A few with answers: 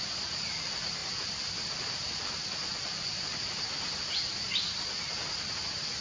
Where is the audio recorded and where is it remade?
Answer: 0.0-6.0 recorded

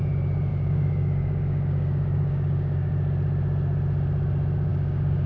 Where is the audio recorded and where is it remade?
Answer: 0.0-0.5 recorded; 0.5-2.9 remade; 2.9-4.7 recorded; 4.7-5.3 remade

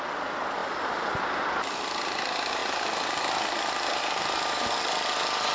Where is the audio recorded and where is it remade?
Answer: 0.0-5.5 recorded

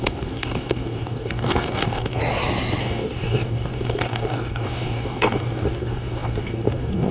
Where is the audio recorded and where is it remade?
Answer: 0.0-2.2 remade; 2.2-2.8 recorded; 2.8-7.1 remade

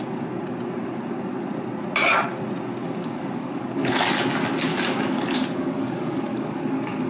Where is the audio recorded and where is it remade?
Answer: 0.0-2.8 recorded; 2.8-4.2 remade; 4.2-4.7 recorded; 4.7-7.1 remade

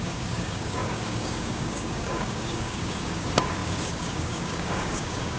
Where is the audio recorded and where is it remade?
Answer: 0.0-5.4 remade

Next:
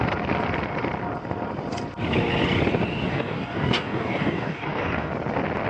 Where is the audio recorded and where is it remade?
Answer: 0.0-3.1 recorded; 3.1-5.1 remade; 5.1-5.7 recorded

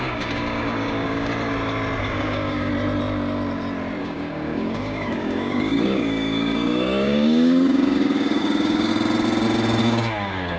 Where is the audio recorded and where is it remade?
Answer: 0.0-1.3 remade; 1.3-2.0 recorded; 2.0-2.7 remade; 2.7-4.0 recorded; 4.0-8.9 remade; 8.9-9.8 recorded; 9.8-10.6 remade